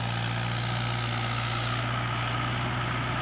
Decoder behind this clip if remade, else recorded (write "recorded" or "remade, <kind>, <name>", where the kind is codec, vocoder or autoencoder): recorded